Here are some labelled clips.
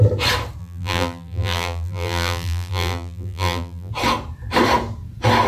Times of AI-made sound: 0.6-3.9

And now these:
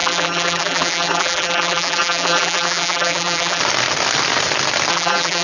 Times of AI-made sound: 0.0-3.6; 4.9-5.4